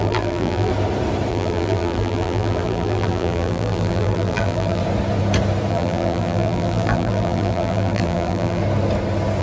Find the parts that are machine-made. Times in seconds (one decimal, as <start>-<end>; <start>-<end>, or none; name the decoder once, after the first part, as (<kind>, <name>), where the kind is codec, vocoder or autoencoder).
0.0-0.7 (vocoder, BigVGAN v2); 1.3-4.8; 5.7-8.6